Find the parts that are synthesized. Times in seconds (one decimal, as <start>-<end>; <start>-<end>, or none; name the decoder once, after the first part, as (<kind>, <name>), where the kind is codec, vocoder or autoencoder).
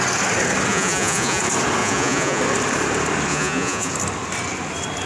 0.7-1.4 (vocoder, Vocos); 1.8-2.4; 3.3-3.9